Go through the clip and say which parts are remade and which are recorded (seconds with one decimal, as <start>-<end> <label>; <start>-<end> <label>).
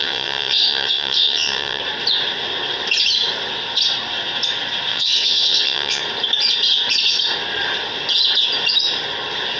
0.0-1.8 remade; 1.8-4.9 recorded; 4.9-6.0 remade; 6.0-9.6 recorded